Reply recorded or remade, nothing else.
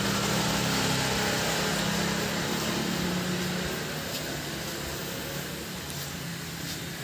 recorded